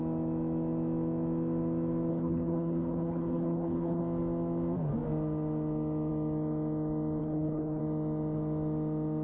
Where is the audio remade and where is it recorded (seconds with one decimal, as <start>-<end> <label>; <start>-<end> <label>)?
0.0-2.1 recorded; 2.1-4.0 remade; 4.0-7.2 recorded; 7.2-7.8 remade; 7.8-9.2 recorded